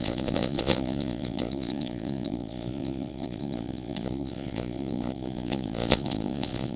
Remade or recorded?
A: remade